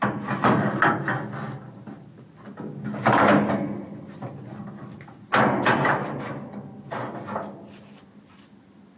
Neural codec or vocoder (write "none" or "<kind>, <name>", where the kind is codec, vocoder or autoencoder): none